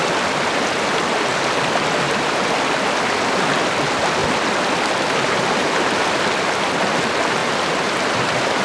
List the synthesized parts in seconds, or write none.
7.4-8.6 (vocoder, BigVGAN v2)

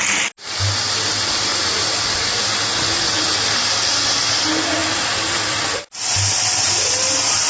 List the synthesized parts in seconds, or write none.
4.8-5.9 (vocoder, BigVGAN v2)

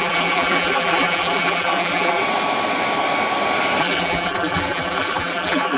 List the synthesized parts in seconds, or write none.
0.0-2.2 (vocoder, BigVGAN v2); 3.8-5.8

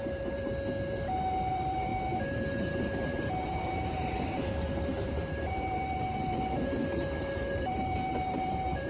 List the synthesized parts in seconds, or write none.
0.0-0.5 (vocoder, BigVGAN v2); 1.5-6.8; 7.5-8.9